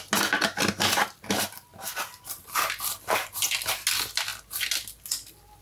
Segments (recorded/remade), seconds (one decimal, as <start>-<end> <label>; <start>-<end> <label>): 0.0-5.6 recorded